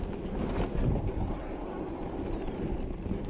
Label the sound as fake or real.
real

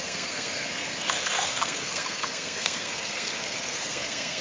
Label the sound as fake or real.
fake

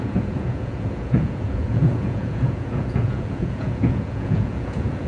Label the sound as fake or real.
fake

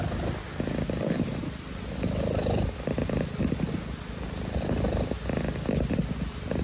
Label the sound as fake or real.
real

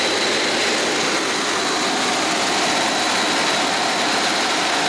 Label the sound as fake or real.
real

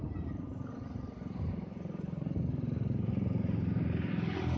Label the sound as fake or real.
real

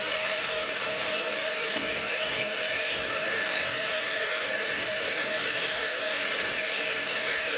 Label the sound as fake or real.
fake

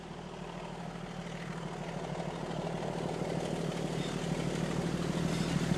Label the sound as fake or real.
real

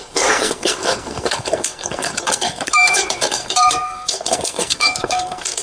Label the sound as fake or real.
fake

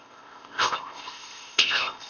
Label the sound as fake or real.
fake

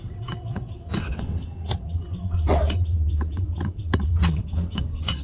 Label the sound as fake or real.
fake